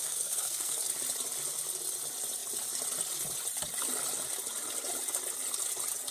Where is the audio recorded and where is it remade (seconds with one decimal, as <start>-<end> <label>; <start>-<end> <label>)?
0.0-0.8 remade; 0.8-6.1 recorded